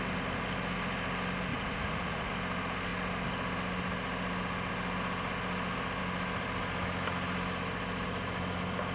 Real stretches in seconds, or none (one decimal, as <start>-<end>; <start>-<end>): 0.0-1.5; 2.3-8.9